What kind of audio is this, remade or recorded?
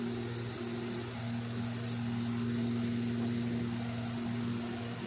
recorded